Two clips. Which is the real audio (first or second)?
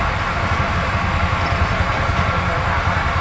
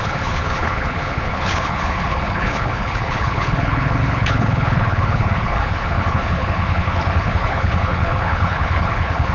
first